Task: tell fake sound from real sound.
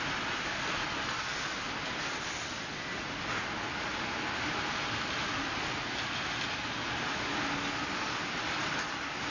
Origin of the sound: real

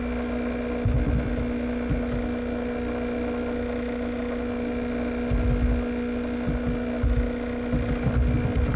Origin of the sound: real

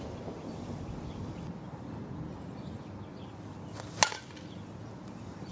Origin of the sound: real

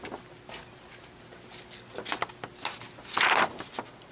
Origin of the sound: real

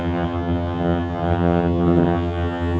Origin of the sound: fake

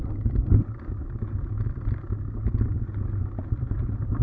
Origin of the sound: real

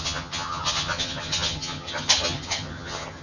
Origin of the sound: fake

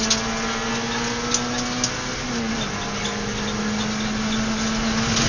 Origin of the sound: real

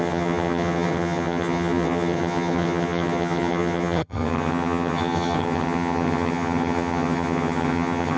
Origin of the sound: fake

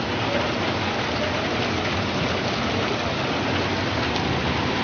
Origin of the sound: real